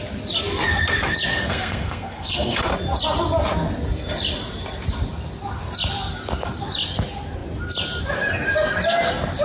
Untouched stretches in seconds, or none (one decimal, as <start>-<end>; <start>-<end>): 0.0-1.3; 2.7-9.4